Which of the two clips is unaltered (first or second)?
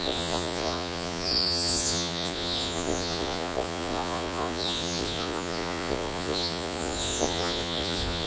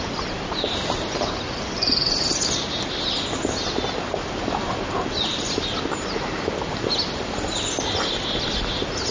second